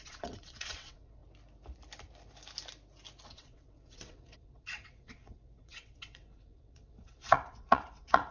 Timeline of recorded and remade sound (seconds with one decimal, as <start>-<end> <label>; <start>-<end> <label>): 0.0-1.2 remade; 1.2-3.3 recorded; 3.3-8.3 remade